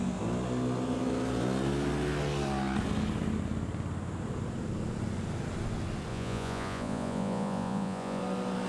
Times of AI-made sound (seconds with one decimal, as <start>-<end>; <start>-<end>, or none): 6.1-8.2

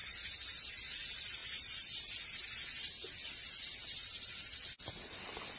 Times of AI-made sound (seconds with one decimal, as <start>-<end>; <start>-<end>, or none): none

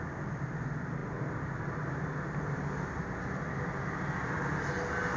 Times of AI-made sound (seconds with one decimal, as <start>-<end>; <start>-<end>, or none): none

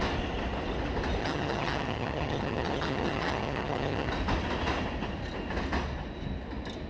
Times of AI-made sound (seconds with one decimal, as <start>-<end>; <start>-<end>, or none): 1.2-4.1

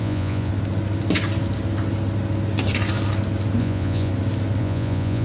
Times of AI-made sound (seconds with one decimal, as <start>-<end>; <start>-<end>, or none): 0.0-0.5; 3.6-4.1; 4.6-5.2

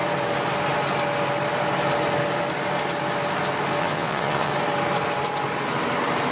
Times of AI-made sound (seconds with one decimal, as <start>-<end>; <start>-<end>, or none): 3.8-4.5

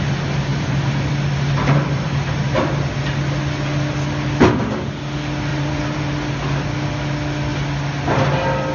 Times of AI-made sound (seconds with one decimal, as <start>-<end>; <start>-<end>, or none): 0.5-1.1; 5.5-6.1

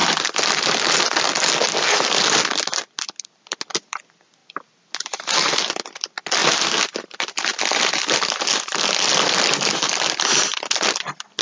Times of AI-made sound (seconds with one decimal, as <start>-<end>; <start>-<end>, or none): none